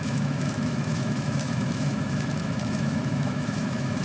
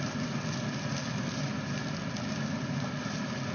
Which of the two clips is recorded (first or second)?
second